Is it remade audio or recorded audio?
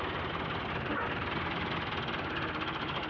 recorded